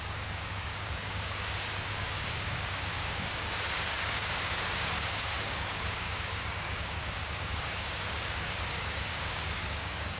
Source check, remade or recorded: remade